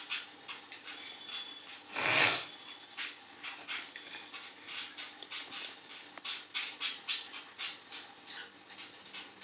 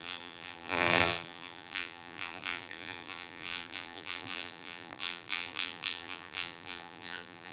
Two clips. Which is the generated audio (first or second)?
second